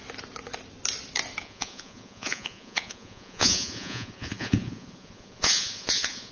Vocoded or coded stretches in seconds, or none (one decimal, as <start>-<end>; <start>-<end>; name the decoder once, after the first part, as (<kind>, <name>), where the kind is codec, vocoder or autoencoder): 1.4-6.3 (vocoder, Vocos)